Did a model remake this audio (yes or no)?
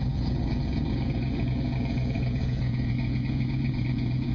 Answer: yes